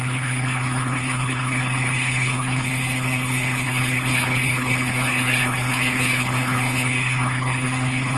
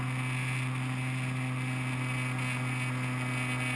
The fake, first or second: first